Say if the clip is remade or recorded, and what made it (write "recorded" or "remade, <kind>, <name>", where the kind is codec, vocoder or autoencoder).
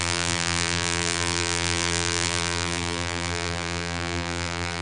remade, vocoder, BigVGAN v2